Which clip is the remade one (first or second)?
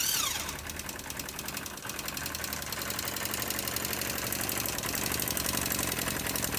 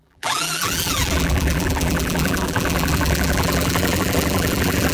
second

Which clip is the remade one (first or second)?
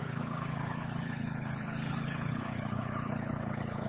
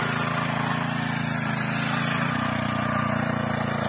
first